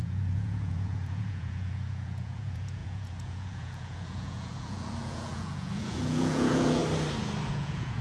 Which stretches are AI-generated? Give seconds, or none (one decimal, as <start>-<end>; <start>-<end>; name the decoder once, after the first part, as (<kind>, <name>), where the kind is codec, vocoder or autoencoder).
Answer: 0.0-6.8 (vocoder, Vocos); 7.5-8.0